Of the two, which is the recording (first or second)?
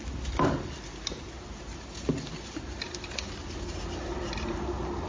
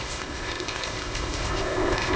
first